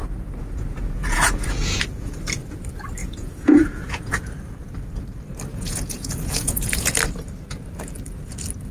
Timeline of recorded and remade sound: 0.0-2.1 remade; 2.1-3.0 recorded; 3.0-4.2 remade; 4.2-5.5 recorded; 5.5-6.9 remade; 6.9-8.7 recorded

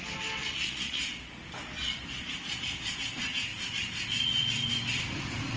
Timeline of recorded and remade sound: 0.0-0.4 recorded; 0.4-1.0 remade; 1.0-5.6 recorded

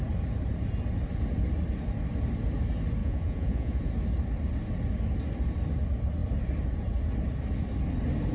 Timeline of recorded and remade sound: 0.0-3.0 recorded; 3.0-3.9 remade; 3.9-8.3 recorded